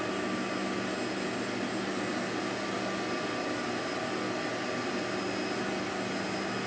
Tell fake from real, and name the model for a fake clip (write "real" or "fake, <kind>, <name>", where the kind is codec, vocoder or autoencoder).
real